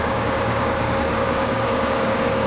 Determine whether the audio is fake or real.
fake